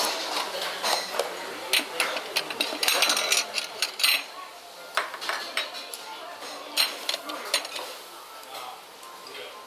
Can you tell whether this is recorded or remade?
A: recorded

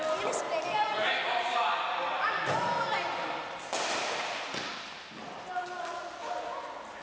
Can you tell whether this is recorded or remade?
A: recorded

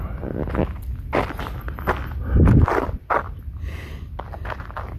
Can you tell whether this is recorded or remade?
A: recorded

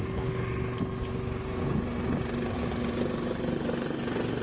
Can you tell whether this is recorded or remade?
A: recorded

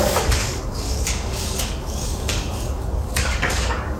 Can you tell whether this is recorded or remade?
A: remade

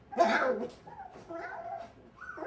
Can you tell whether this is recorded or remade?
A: recorded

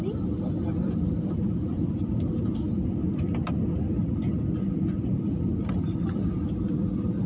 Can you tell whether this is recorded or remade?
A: recorded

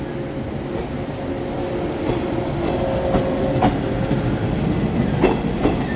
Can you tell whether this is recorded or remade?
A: recorded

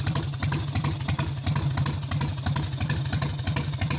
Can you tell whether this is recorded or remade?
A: recorded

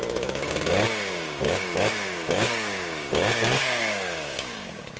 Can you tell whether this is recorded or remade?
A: remade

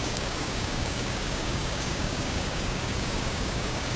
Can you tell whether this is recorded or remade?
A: remade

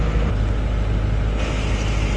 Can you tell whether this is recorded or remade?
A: recorded